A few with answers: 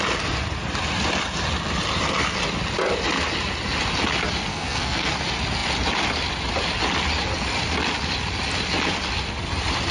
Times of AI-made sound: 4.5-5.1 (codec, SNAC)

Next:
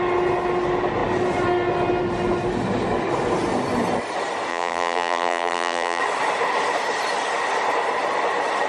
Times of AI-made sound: 4.5-6.0 (vocoder, BigVGAN v2)

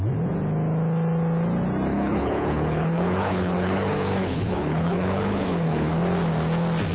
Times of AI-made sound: 1.9-5.9 (codec, HILCodec)